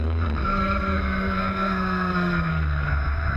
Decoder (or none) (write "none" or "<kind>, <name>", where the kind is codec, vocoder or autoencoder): codec, SNAC